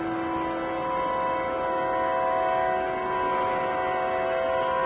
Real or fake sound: real